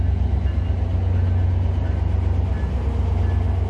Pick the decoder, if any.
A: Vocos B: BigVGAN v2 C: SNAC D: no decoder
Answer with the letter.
D